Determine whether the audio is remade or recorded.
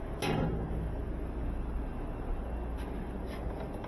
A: recorded